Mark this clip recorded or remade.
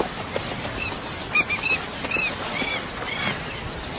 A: recorded